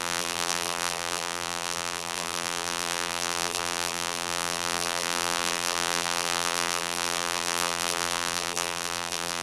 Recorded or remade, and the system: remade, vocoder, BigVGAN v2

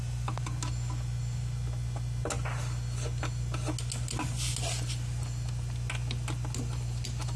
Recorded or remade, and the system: recorded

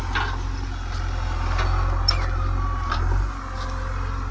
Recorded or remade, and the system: recorded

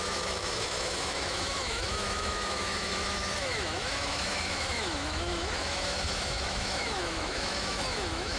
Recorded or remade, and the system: remade, autoencoder, DAC-VAE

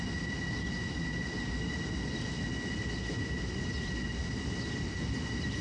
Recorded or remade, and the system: recorded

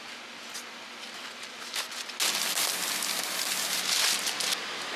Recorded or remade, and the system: recorded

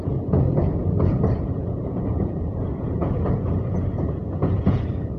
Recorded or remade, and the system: remade, vocoder, Vocos